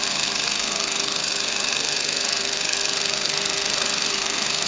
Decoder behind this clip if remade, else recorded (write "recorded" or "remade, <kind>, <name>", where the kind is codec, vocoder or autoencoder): remade, codec, SNAC